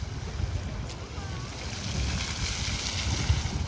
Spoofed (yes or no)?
no